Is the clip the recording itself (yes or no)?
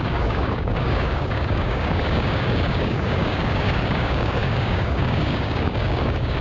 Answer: no